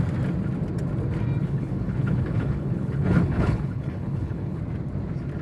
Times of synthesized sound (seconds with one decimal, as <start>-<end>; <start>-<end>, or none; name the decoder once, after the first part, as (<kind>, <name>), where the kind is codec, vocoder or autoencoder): 1.4-4.6 (codec, HILCodec)